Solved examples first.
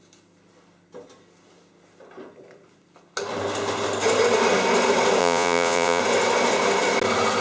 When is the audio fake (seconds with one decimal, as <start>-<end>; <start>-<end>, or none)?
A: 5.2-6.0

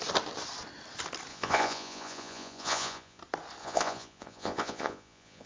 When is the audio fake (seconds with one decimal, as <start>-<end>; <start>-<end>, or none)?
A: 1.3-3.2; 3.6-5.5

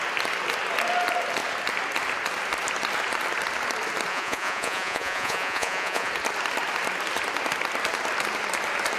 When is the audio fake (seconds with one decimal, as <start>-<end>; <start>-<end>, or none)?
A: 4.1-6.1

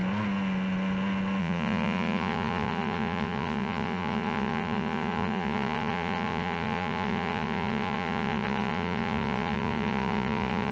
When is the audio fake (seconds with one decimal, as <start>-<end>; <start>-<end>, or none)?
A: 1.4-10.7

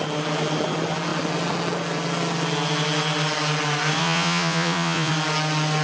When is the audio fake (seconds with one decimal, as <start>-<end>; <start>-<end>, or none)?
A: 4.0-5.1